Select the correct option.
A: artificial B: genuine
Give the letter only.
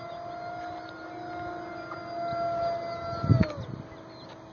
B